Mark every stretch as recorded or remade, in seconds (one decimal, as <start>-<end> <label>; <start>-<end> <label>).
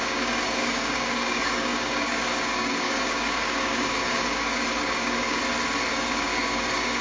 0.0-5.4 remade; 5.4-5.9 recorded; 5.9-7.0 remade